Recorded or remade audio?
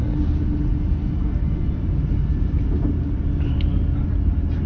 recorded